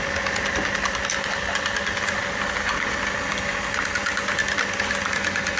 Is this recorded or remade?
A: recorded